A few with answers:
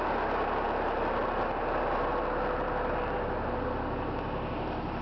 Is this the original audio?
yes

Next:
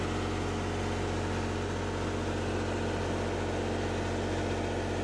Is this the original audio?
yes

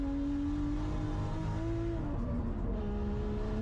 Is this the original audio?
yes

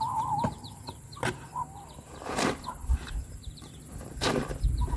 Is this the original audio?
no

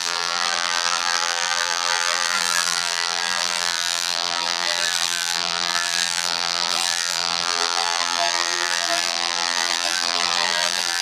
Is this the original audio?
no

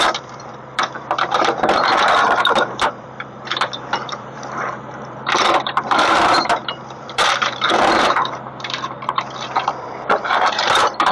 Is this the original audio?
no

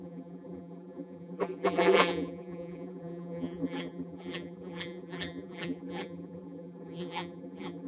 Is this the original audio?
no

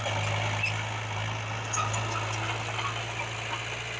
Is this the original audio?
yes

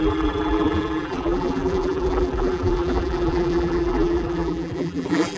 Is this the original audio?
no